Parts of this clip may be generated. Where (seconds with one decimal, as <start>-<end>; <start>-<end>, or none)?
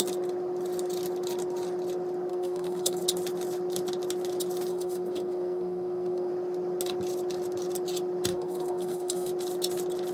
2.3-3.0; 4.7-6.3; 8.3-9.3